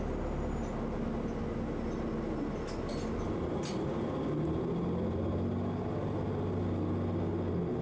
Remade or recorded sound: recorded